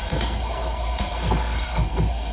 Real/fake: fake